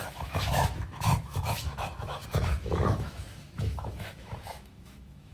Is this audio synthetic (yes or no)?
yes